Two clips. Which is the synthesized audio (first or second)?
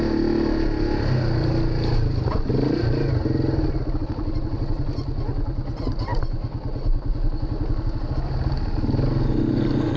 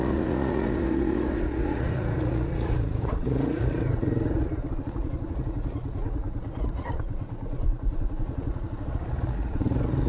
second